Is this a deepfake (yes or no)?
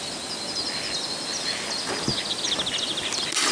no